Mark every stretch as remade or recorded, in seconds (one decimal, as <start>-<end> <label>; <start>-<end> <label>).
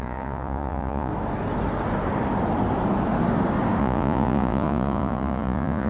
0.0-1.1 remade; 1.1-3.8 recorded; 3.8-5.9 remade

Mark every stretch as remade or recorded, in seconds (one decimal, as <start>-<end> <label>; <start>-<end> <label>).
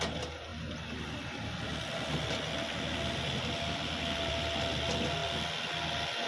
0.0-6.3 recorded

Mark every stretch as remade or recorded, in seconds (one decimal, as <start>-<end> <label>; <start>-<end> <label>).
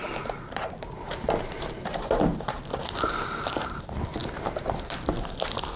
0.0-3.5 remade; 3.5-5.8 recorded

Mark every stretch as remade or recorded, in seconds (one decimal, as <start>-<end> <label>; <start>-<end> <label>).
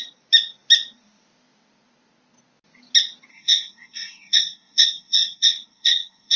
0.0-3.3 recorded; 3.3-6.4 remade